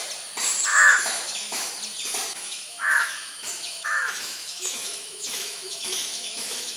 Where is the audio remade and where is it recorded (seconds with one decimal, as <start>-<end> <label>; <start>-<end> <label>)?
0.0-0.7 recorded; 0.7-1.7 remade; 1.7-2.3 recorded; 2.3-6.8 remade